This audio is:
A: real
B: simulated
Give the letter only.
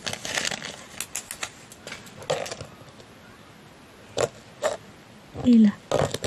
A